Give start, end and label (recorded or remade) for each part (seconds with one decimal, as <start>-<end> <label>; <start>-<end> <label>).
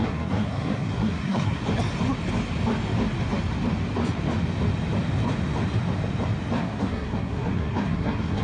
0.0-1.6 remade; 1.6-6.6 recorded; 6.6-8.4 remade